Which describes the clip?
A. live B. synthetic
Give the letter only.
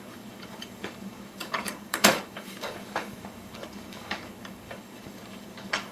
B